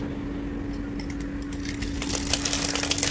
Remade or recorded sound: recorded